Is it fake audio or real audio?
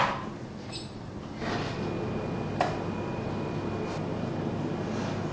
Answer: real